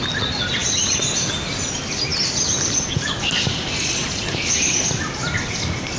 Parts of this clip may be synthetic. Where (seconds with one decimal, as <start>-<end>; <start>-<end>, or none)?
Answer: none